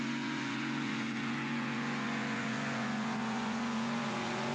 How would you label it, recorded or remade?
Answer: remade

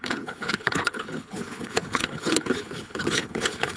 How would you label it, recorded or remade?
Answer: remade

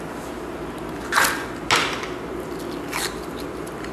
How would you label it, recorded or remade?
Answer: recorded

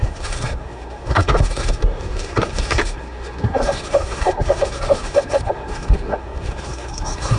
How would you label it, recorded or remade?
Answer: remade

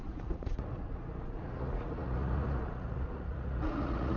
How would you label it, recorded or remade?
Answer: remade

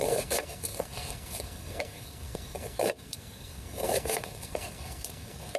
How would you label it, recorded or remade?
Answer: remade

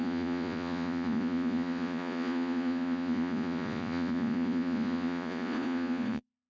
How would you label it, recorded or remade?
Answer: remade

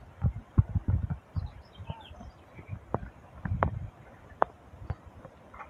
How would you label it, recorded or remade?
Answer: recorded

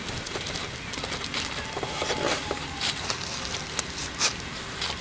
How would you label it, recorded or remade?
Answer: recorded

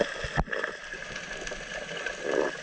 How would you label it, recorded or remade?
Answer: recorded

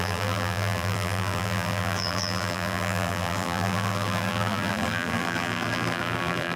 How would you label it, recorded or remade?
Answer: remade